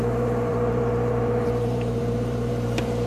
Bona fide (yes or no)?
no